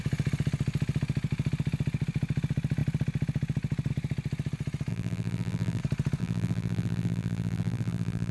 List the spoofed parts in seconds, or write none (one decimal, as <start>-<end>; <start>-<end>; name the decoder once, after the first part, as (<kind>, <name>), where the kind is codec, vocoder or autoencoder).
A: 4.9-5.8 (vocoder, BigVGAN v2); 6.2-8.3